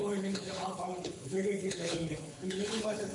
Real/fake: fake